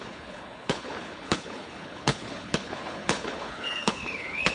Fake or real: fake